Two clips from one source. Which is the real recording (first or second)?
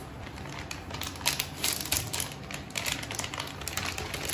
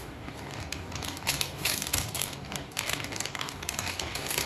first